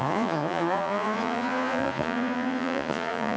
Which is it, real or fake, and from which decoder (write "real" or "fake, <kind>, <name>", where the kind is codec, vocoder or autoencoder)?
fake, vocoder, Vocos